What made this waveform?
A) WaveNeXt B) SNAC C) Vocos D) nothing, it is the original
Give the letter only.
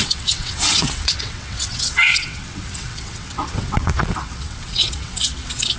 A